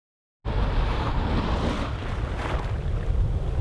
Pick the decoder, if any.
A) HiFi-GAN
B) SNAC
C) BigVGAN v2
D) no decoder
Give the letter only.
D